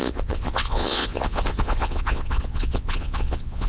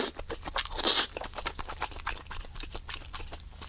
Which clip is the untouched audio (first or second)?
second